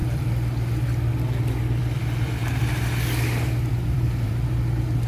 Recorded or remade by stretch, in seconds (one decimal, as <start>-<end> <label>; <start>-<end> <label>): 0.0-1.1 remade; 1.1-1.8 recorded; 1.8-2.6 remade; 2.6-3.7 recorded; 3.7-4.3 remade; 4.3-5.1 recorded